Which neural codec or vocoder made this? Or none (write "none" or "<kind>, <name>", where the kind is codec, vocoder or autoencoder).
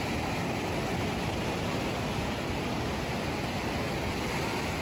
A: none